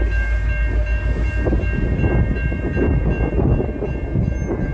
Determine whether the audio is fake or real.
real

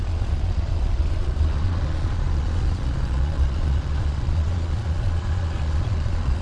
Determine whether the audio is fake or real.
fake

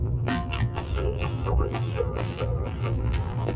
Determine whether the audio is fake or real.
fake